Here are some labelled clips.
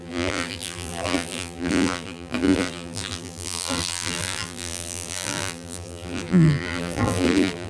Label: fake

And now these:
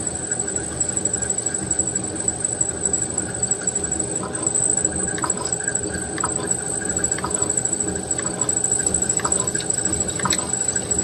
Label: real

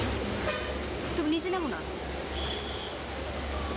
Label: real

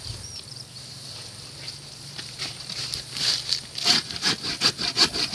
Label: fake